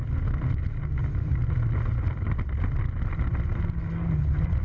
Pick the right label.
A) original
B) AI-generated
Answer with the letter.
A